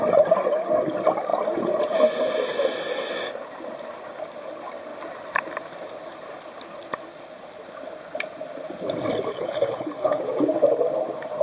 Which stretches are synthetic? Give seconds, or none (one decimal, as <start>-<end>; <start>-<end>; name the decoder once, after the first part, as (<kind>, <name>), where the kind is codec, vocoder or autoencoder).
9.3-10.2 (codec, HILCodec)